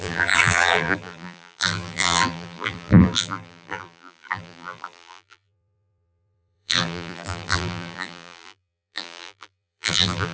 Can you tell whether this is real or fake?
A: fake